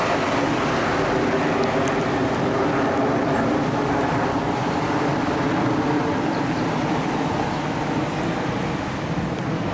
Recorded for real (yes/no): no